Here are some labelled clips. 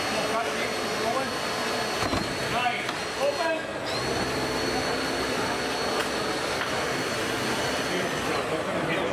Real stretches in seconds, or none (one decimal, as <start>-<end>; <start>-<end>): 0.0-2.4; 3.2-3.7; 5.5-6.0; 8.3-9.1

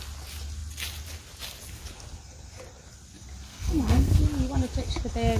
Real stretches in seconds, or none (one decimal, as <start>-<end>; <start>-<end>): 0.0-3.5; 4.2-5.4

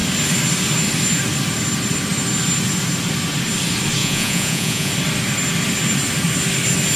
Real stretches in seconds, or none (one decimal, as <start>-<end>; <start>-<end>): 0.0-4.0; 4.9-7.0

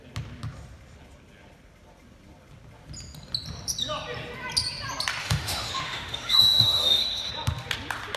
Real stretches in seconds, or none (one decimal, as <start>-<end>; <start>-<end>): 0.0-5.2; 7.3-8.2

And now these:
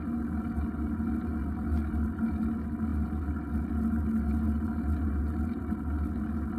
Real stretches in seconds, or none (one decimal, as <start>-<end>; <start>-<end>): 0.0-6.6

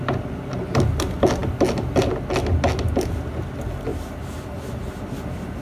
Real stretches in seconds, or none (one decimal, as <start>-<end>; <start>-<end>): 0.0-3.9; 5.0-5.6

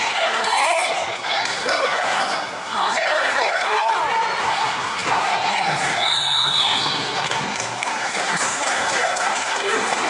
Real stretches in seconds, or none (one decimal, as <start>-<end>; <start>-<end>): 3.9-4.4